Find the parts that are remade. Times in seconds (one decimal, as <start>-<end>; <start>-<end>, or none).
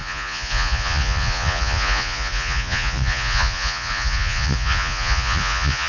0.0-5.9